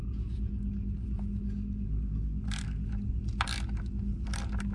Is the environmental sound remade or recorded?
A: recorded